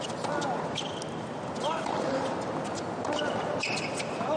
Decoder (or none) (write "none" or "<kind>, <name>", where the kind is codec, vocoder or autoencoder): none